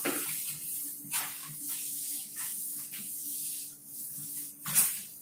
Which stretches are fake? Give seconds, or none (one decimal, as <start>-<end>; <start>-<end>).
1.4-4.5